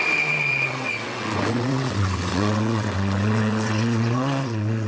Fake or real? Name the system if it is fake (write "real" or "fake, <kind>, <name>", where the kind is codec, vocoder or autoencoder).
fake, vocoder, WaveNeXt